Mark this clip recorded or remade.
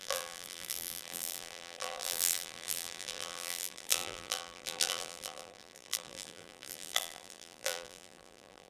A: remade